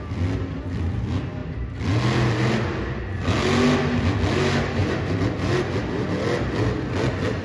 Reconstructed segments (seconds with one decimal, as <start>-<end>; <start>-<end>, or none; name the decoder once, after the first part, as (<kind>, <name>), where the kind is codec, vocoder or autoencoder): none